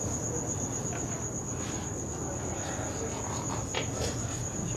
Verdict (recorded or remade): recorded